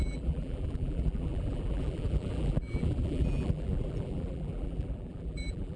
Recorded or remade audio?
remade